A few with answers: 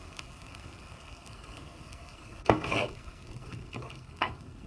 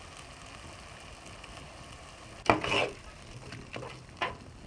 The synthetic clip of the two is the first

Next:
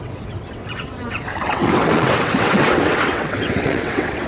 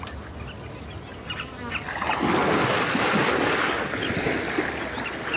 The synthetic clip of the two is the first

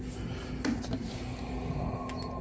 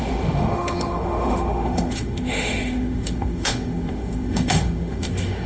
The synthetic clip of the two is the second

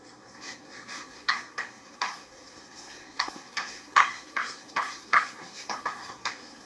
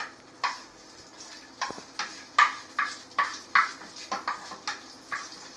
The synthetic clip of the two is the first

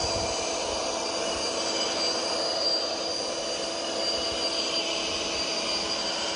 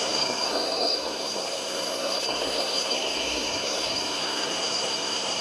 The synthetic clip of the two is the second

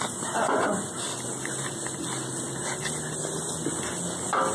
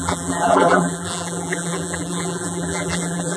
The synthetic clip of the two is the second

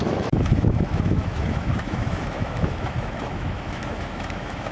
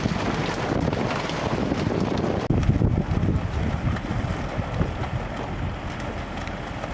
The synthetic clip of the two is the first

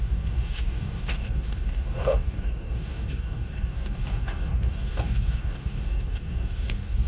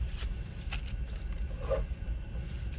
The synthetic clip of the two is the first